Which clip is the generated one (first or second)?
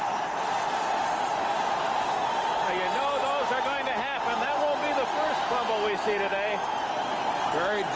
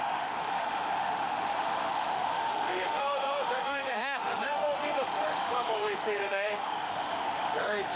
second